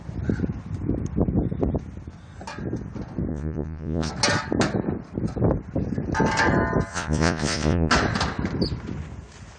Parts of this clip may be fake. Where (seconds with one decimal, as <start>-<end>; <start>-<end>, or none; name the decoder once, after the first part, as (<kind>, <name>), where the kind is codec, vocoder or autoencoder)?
3.3-4.1 (vocoder, Vocos); 6.9-7.9